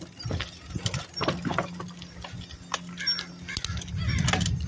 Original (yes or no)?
yes